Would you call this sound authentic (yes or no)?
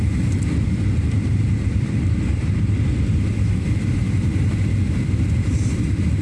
no